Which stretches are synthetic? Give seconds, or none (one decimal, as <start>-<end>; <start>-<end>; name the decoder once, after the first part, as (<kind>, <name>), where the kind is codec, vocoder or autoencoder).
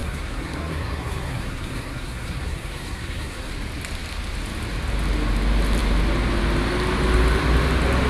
0.0-3.5 (codec, SNAC)